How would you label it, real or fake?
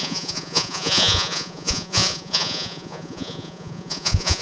fake